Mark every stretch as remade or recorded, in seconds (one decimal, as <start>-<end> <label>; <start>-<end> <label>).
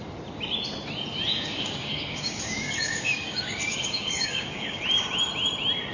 0.0-1.3 recorded; 1.3-4.8 remade; 4.8-5.9 recorded